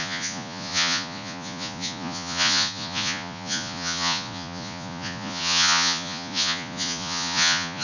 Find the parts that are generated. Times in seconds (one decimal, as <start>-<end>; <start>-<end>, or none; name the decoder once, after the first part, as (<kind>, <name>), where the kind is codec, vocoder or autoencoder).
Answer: 0.0-7.8 (vocoder, Vocos)